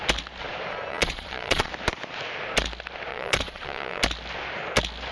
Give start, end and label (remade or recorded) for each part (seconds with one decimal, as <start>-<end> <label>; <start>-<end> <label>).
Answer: 0.0-0.9 recorded; 0.9-1.7 remade; 1.7-3.1 recorded; 3.1-4.0 remade; 4.0-5.1 recorded